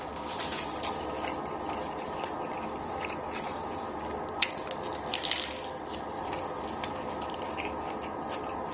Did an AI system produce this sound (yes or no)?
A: no